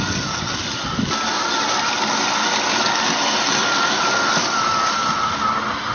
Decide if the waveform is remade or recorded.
recorded